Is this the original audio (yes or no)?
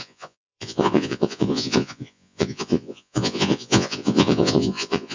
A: no